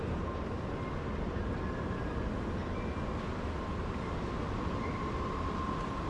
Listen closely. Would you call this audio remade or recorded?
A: recorded